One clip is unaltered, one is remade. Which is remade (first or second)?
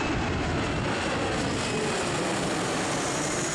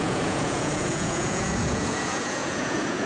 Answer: second